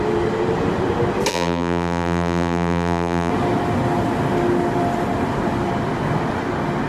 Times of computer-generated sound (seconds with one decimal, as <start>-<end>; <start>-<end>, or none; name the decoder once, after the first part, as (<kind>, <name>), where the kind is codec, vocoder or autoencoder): 1.3-3.3 (vocoder, BigVGAN v2)